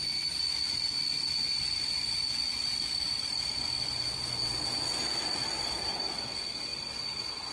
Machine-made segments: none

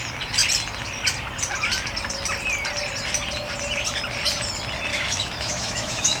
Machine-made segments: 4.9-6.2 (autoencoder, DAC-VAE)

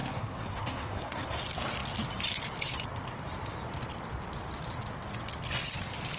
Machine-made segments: 0.0-1.4 (codec, SNAC)

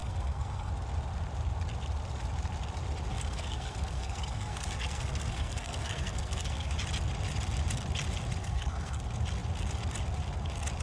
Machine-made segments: 0.0-0.7 (codec, SNAC); 3.1-6.7; 8.4-9.0

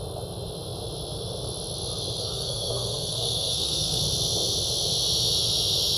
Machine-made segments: 2.2-4.0 (codec, SNAC)